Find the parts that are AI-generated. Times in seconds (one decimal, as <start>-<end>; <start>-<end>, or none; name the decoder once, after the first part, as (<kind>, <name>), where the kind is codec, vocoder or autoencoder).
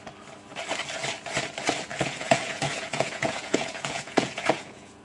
1.9-5.0 (vocoder, Vocos)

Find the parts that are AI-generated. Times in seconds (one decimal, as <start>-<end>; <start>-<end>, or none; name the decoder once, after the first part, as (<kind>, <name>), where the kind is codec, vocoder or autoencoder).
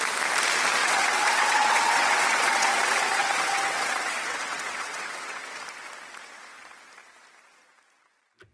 0.8-5.5 (vocoder, WaveNeXt)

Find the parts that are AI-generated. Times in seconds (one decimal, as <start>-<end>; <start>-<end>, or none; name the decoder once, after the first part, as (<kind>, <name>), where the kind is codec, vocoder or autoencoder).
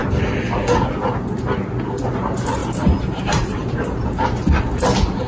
2.6-4.6 (vocoder, BigVGAN v2)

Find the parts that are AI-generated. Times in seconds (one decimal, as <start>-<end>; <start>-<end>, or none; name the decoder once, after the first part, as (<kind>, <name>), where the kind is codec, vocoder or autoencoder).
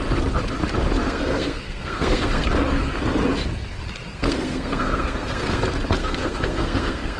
1.0-2.5 (codec, SNAC); 4.1-5.6; 6.0-7.2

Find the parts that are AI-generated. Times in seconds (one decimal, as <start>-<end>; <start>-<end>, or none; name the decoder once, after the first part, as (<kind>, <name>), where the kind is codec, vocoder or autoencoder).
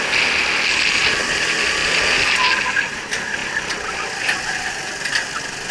none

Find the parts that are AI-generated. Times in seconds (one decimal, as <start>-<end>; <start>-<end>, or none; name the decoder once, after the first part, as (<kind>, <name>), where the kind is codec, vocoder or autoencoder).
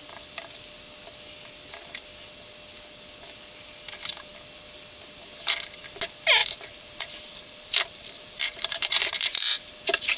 6.4-10.2 (vocoder, BigVGAN v2)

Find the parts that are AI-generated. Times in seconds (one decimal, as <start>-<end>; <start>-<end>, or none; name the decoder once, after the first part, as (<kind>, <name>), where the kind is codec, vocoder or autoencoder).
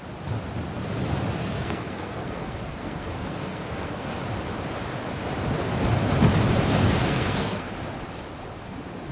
1.4-4.2 (codec, SNAC); 6.8-7.7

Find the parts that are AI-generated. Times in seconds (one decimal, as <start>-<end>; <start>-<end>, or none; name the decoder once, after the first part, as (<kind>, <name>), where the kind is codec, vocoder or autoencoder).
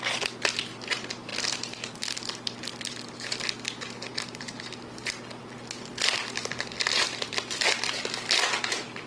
none